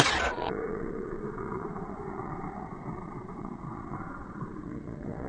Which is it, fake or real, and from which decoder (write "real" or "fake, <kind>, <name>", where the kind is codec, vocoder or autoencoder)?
fake, vocoder, Vocos